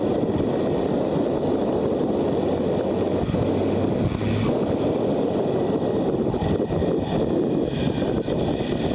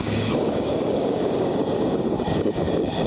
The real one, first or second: first